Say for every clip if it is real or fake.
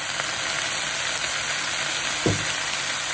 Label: real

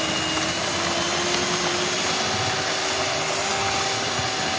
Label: real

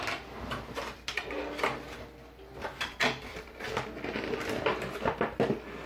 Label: fake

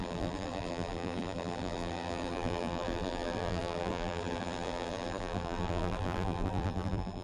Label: fake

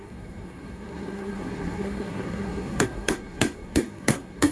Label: fake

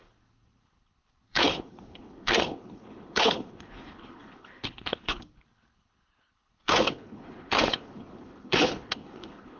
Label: fake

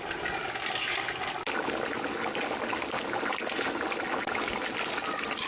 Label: real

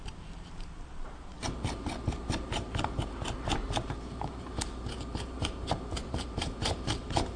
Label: fake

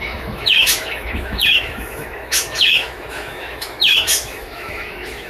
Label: fake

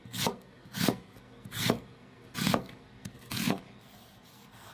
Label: fake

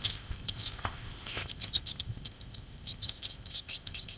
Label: fake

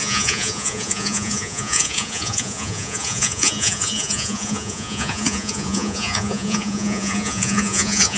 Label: fake